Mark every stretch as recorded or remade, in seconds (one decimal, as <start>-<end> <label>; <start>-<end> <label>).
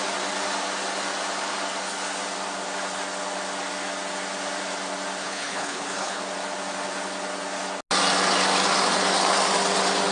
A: 0.0-5.2 recorded; 5.2-6.2 remade; 6.2-10.1 recorded